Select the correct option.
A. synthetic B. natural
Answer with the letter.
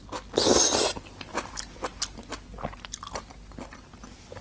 B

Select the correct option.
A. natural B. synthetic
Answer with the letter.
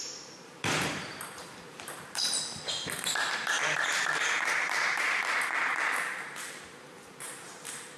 B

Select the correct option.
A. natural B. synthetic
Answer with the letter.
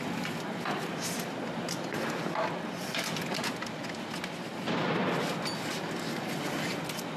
A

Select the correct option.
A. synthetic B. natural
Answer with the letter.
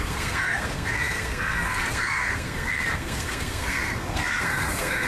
A